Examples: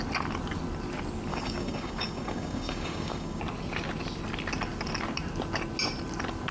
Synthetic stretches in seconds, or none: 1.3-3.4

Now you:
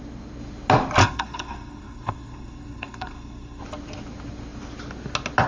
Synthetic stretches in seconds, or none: 1.0-3.6

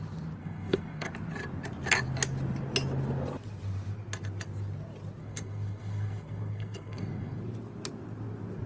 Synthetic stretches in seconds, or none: 0.4-1.1; 5.2-7.4

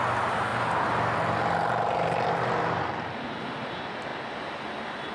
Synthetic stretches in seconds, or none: none